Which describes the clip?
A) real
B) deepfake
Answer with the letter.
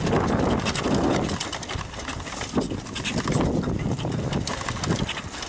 A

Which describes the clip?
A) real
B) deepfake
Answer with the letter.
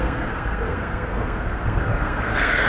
B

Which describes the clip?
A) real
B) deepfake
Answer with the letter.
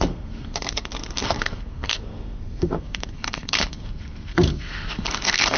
B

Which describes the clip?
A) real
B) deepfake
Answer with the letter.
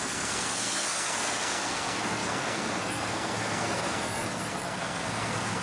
B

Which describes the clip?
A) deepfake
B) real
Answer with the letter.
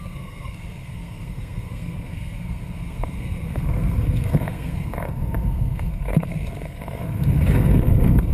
A